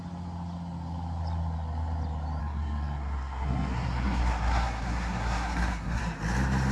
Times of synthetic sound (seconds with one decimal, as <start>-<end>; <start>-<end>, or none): 2.4-6.0